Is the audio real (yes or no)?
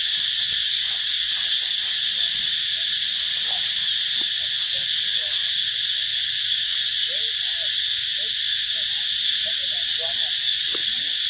yes